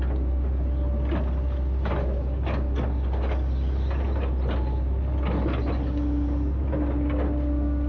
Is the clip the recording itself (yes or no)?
yes